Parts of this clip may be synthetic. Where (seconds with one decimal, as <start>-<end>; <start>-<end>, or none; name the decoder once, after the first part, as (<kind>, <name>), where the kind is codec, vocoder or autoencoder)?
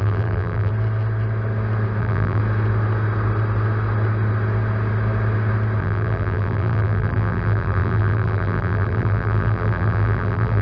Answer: 0.0-0.7 (vocoder, BigVGAN v2); 2.0-2.4; 5.8-10.6